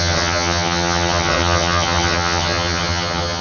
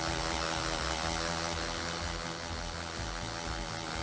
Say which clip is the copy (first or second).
first